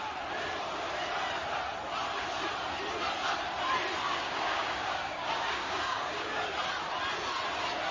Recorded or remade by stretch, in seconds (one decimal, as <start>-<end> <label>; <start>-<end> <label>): 0.0-4.2 recorded; 4.2-6.4 remade; 6.4-7.9 recorded